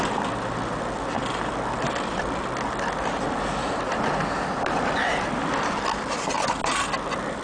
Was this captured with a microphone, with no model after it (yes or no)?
yes